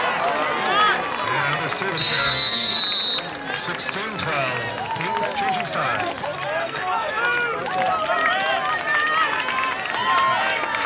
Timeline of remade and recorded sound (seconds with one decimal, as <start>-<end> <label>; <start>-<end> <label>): 0.0-2.0 recorded; 2.0-2.8 remade; 2.8-6.6 recorded; 6.6-7.1 remade; 7.1-10.9 recorded